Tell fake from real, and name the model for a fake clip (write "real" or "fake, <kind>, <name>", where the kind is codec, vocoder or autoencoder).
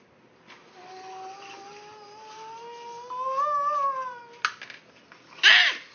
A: real